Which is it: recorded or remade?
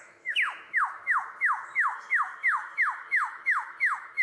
remade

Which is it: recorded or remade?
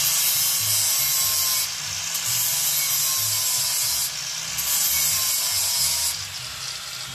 recorded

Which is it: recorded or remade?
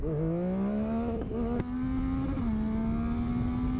recorded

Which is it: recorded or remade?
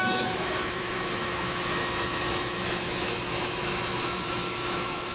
remade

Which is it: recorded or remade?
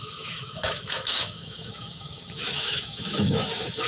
remade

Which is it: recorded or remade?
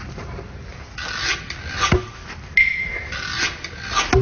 recorded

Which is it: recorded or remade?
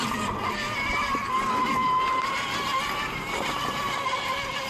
recorded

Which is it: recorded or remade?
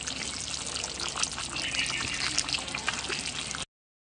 recorded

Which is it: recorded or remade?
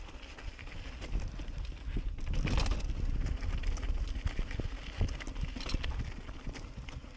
recorded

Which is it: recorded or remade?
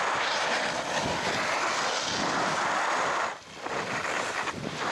recorded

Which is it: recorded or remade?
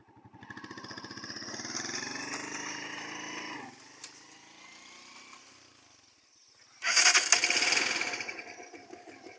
recorded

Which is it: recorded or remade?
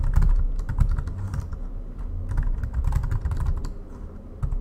recorded